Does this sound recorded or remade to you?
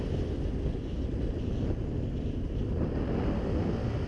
recorded